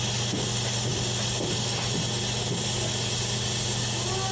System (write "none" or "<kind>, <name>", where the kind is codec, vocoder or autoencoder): none